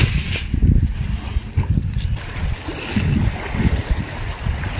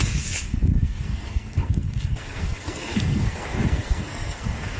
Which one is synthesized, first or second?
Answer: second